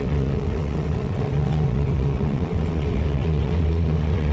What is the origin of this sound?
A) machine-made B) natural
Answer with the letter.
A